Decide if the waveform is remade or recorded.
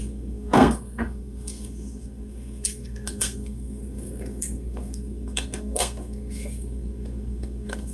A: remade